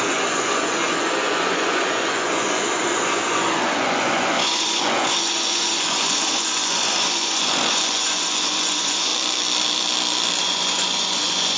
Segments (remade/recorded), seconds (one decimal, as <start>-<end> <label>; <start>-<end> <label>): 0.0-9.1 remade; 9.1-10.4 recorded; 10.4-11.6 remade